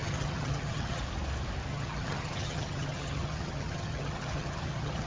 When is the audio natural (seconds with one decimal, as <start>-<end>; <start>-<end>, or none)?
1.0-1.7